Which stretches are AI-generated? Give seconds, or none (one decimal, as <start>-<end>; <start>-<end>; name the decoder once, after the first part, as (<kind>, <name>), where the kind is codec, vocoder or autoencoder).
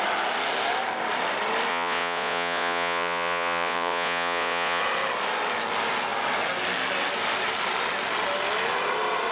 1.7-4.8 (vocoder, Vocos)